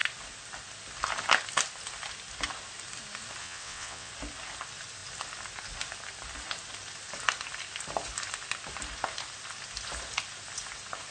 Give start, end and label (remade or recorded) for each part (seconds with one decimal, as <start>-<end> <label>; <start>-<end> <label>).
0.0-3.4 recorded; 3.4-4.1 remade; 4.1-11.1 recorded